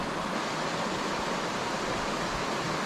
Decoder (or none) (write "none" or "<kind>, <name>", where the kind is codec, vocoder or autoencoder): none